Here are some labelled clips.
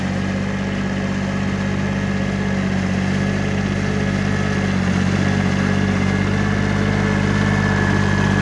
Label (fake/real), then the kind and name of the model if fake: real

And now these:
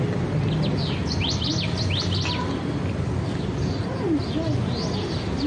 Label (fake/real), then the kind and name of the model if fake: real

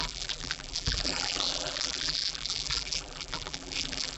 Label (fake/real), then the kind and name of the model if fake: fake, vocoder, BigVGAN v2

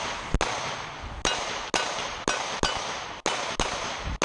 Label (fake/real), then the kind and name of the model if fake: real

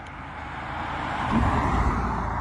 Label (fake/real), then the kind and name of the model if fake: real